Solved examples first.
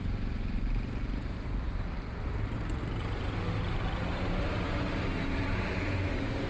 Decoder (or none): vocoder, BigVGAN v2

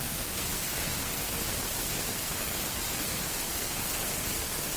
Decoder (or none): codec, SNAC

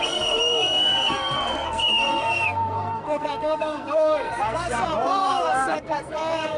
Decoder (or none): codec, SNAC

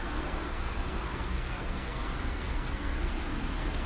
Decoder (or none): codec, SNAC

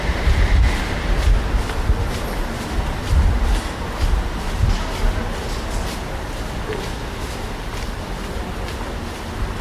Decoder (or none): none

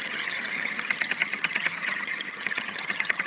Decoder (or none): vocoder, HiFi-GAN